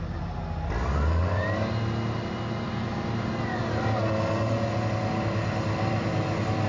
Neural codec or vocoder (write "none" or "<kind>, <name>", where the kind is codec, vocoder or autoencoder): none